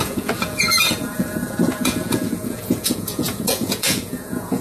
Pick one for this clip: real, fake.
fake